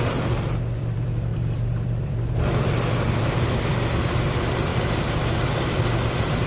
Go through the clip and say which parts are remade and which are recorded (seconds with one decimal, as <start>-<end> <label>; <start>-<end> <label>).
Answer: 0.0-6.5 remade